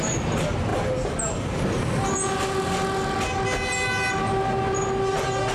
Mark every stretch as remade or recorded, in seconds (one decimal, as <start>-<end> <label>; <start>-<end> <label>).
0.0-5.5 recorded